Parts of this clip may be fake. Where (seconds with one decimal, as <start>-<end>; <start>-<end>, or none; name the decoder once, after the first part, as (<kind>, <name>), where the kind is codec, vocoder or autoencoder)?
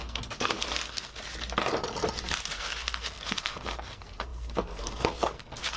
0.0-1.2 (codec, SNAC); 2.3-5.8